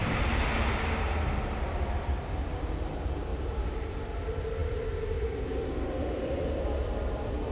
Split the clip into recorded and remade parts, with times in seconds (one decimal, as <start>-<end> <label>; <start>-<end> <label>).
0.0-3.3 recorded; 3.3-4.0 remade; 4.0-4.6 recorded; 4.6-7.5 remade